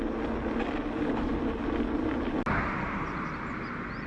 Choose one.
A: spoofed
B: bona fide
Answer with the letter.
B